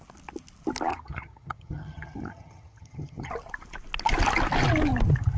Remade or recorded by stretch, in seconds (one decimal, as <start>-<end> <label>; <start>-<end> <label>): 0.0-0.9 recorded; 0.9-3.3 remade; 3.3-5.4 recorded